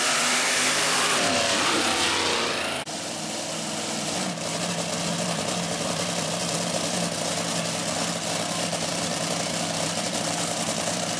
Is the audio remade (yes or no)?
yes